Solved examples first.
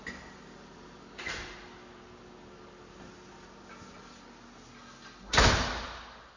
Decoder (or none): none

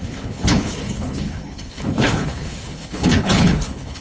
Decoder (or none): codec, HILCodec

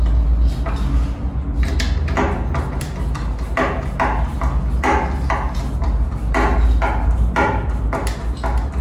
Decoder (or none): none